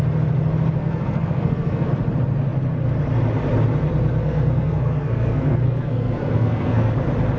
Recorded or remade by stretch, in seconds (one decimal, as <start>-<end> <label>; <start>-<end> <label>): 0.0-0.8 recorded; 0.8-1.9 remade; 1.9-4.2 recorded; 4.2-6.9 remade; 6.9-7.4 recorded